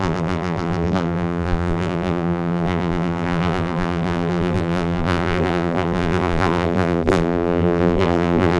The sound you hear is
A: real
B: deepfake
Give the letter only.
B